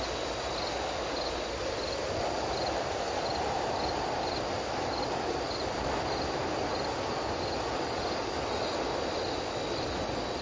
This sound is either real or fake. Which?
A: real